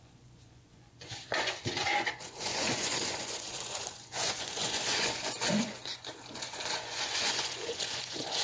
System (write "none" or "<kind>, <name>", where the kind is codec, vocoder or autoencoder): vocoder, Vocos